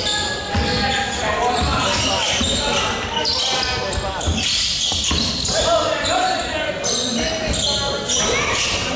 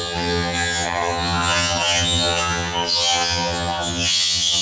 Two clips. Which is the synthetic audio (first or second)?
second